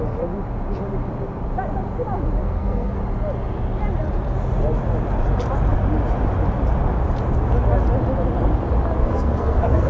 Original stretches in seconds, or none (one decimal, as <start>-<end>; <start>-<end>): 0.0-2.4; 3.0-9.0